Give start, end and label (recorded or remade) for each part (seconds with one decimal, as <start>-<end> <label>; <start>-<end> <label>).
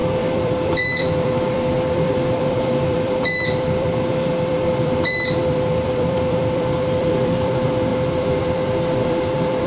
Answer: 0.0-9.7 remade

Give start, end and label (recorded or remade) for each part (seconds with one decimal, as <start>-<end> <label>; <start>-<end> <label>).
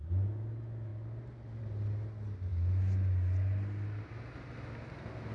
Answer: 0.0-5.3 recorded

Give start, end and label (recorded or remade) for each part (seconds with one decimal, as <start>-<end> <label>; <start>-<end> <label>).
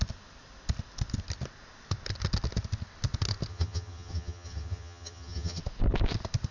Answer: 0.0-3.5 recorded; 3.5-5.6 remade; 5.6-6.5 recorded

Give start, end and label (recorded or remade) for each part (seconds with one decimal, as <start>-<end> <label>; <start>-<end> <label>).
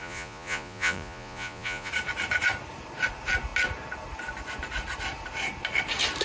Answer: 0.0-1.9 remade; 1.9-6.2 recorded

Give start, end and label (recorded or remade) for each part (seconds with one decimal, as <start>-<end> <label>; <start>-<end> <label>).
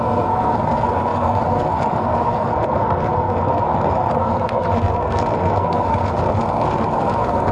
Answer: 0.0-7.5 remade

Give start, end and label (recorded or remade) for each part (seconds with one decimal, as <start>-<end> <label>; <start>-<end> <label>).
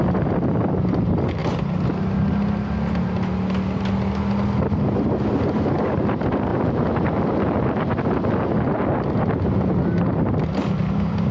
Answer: 0.0-6.5 recorded; 6.5-7.9 remade; 7.9-11.3 recorded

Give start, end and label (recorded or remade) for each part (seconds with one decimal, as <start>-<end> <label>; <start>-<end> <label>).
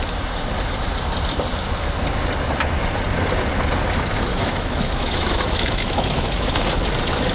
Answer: 0.0-4.3 recorded; 4.3-6.6 remade; 6.6-7.3 recorded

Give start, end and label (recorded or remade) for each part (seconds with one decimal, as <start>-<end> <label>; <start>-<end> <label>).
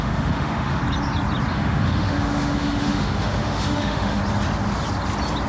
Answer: 0.0-0.8 remade; 0.8-1.5 recorded; 1.5-4.2 remade; 4.2-5.5 recorded